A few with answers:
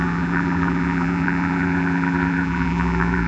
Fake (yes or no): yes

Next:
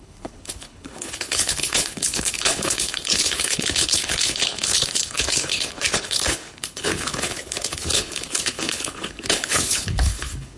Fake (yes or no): yes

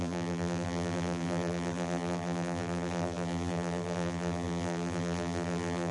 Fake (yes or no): yes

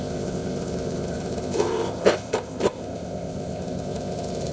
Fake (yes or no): yes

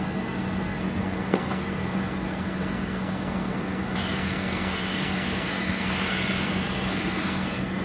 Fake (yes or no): yes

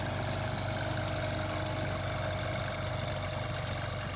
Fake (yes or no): no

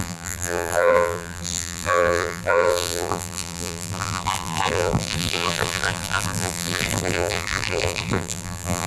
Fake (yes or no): yes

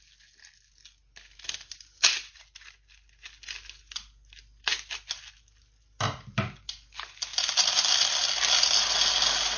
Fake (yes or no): no